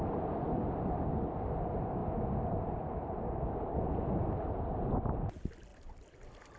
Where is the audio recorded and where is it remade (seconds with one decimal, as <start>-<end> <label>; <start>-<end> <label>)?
0.0-6.6 recorded